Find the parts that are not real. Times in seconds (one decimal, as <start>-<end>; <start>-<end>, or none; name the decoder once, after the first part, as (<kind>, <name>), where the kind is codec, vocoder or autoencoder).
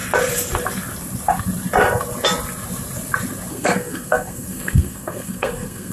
3.5-5.9 (codec, SNAC)